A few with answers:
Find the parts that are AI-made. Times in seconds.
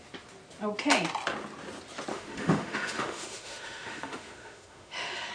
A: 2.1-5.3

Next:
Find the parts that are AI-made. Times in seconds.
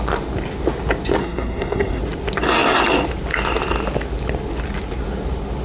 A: 1.2-2.0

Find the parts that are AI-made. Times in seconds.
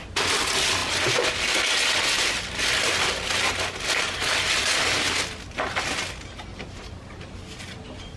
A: none